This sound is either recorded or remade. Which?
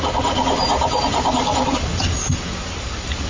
recorded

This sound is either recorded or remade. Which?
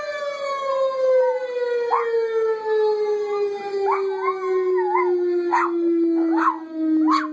recorded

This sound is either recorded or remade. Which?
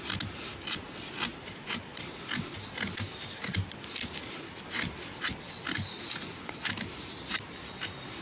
recorded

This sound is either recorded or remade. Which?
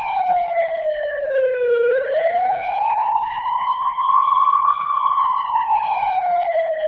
remade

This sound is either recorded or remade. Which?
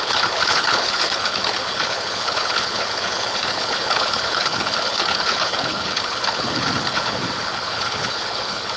remade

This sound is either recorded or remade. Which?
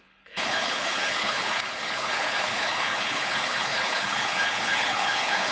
remade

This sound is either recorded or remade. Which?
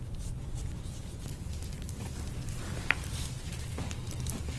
recorded